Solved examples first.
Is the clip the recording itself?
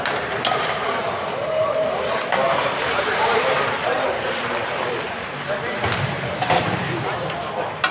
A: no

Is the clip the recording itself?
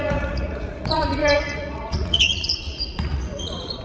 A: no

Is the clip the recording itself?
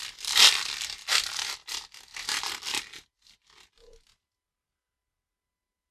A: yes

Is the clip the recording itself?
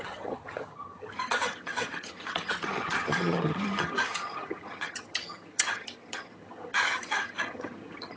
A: no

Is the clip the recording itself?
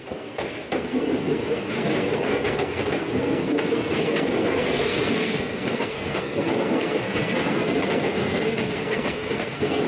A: no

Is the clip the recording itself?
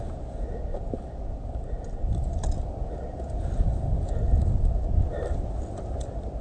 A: yes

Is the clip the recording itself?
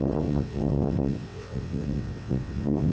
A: no